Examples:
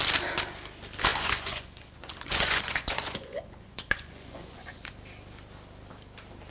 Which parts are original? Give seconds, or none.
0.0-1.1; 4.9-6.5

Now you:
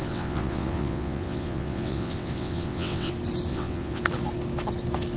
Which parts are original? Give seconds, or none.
3.1-3.5; 4.0-5.2